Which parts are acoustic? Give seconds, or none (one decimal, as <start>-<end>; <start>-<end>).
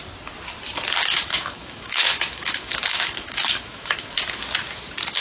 0.0-1.1; 4.1-5.2